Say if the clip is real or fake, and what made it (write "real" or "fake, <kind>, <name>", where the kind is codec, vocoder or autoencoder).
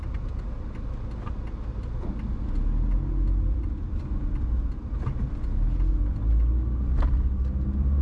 real